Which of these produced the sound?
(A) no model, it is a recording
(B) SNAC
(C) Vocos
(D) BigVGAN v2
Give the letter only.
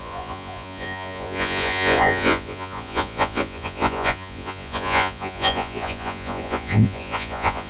C